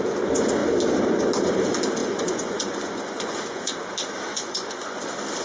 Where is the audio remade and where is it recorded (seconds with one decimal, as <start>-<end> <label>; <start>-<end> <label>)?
0.0-2.0 recorded; 2.0-3.7 remade; 3.7-4.3 recorded; 4.3-5.0 remade; 5.0-5.4 recorded